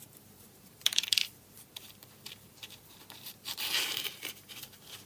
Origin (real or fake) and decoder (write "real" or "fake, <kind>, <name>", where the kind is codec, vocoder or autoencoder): fake, vocoder, BigVGAN v2